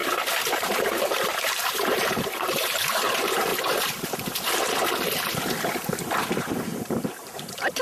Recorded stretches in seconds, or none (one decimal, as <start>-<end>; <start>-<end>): 0.0-0.5; 3.5-6.2